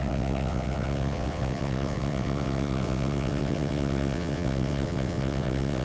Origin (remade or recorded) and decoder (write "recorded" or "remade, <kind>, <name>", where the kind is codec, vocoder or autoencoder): remade, vocoder, WaveNeXt